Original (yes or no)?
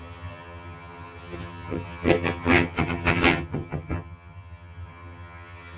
no